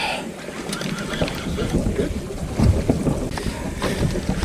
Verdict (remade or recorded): recorded